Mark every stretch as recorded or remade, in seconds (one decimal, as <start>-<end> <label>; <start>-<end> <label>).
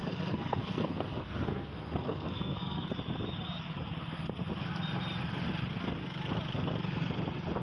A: 0.0-2.9 remade; 2.9-7.6 recorded